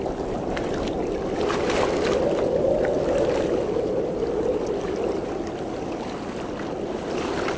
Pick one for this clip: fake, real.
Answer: real